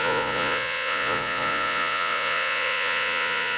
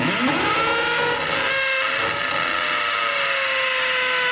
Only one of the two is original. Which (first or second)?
second